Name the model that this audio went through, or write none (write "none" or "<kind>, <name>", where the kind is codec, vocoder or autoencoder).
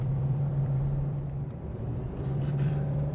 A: vocoder, BigVGAN v2